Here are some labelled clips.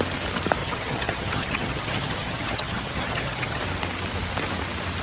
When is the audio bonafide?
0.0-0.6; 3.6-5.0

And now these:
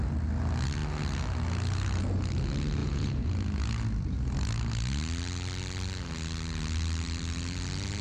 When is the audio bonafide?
0.0-2.8; 3.3-8.0

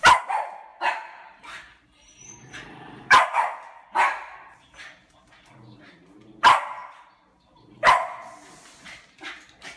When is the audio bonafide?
0.0-9.8

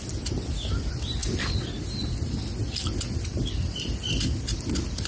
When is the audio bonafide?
0.0-5.1

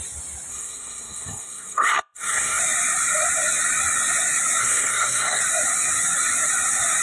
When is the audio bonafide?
0.0-0.5; 2.6-4.6; 5.4-7.0

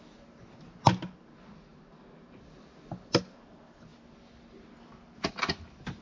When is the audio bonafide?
0.0-6.0

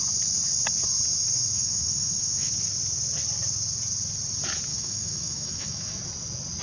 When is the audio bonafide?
0.0-1.2; 2.5-4.7; 6.0-6.6